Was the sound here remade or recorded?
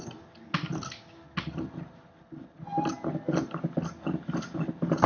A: recorded